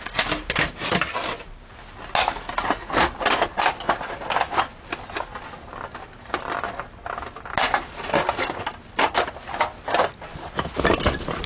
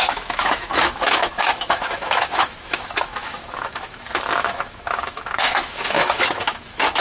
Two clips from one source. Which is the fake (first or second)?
second